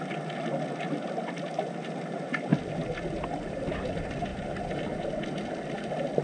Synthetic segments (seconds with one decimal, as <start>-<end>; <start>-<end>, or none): none